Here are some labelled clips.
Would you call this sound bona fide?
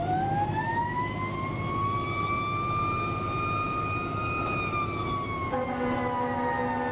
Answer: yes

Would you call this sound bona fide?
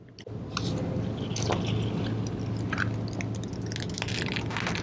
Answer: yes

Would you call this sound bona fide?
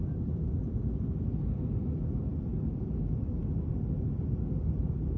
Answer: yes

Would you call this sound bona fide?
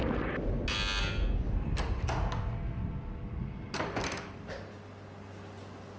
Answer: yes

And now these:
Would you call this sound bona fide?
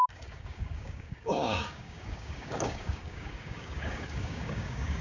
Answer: no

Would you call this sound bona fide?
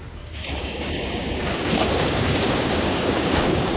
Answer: no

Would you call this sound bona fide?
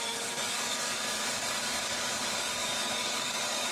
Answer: no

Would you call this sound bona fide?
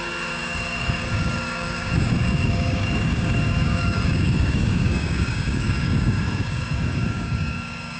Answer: no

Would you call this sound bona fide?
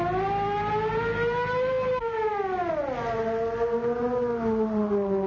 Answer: yes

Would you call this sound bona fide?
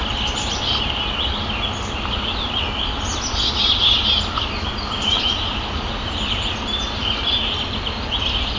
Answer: yes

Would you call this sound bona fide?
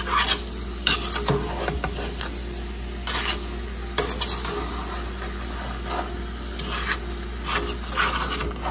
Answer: yes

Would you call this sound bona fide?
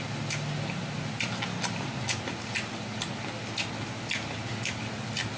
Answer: yes